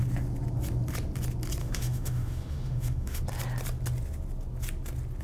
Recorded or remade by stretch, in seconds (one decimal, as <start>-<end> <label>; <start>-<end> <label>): 0.0-1.6 recorded; 1.6-3.2 remade; 3.2-5.2 recorded